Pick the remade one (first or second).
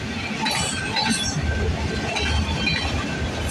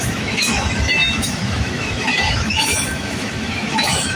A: second